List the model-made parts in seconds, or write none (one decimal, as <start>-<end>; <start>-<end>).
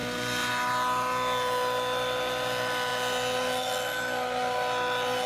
none